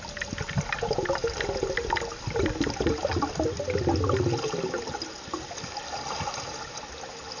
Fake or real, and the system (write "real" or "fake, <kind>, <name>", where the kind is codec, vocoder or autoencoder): real